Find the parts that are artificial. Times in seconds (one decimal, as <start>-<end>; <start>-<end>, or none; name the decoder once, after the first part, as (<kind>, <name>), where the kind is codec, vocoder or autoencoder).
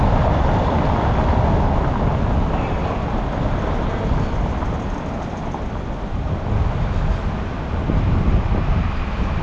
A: none